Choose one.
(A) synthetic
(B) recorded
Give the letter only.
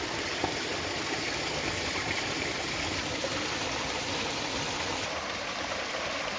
A